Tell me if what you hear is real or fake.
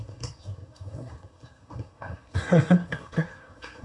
fake